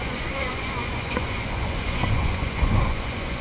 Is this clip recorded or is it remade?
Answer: remade